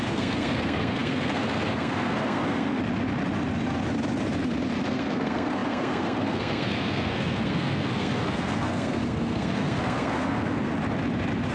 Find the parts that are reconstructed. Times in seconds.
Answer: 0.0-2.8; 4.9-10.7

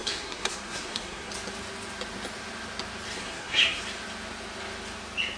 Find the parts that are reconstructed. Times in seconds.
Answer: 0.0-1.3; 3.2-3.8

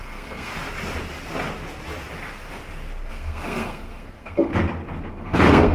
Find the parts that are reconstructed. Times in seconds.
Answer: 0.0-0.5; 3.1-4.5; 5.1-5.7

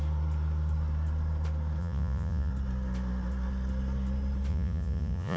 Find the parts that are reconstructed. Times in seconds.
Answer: 1.8-2.5; 4.5-5.4

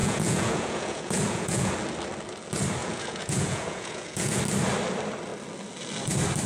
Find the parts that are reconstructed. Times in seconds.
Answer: 0.0-1.7; 2.8-4.4

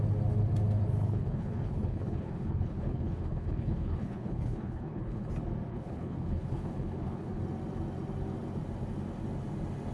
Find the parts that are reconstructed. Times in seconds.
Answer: 1.0-5.3; 5.7-7.4

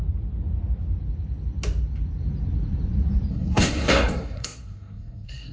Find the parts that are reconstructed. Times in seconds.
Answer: 3.3-5.5

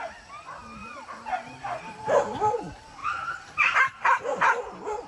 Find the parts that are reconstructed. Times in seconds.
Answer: 0.8-2.6; 3.0-5.1